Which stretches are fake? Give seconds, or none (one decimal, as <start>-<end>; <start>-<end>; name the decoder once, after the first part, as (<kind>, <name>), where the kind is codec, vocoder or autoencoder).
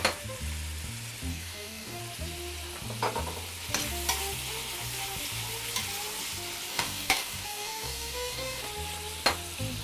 1.3-2.0 (codec, DAC); 6.7-8.6